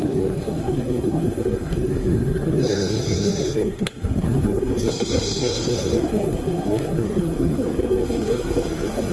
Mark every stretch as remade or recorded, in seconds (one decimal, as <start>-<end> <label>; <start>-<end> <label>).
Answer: 0.0-9.1 remade